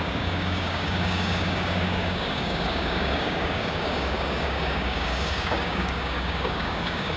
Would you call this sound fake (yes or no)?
yes